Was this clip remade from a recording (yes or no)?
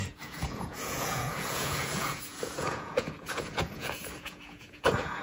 yes